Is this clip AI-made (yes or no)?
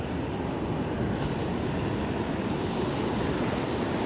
no